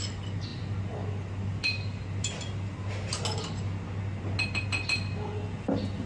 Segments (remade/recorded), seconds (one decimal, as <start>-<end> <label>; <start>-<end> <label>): 0.0-6.1 recorded